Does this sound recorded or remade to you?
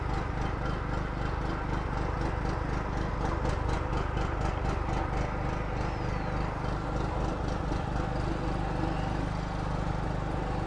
recorded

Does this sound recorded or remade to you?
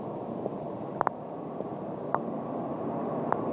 recorded